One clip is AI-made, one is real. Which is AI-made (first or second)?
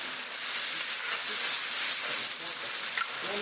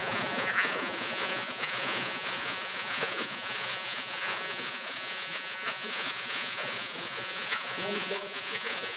second